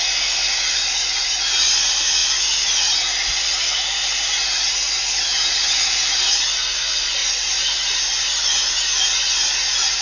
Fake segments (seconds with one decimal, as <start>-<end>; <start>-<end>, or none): 7.2-8.3